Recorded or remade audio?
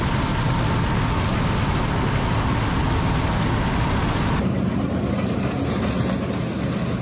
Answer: recorded